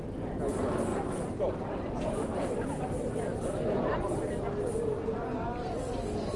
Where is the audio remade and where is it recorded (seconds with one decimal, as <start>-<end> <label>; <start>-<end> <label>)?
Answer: 0.0-0.9 recorded; 0.9-4.4 remade; 4.4-6.4 recorded